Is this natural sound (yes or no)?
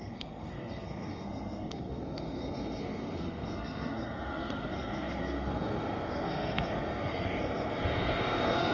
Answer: no